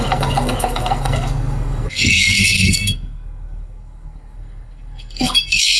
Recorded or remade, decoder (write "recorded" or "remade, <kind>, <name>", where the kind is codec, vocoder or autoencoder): remade, codec, SNAC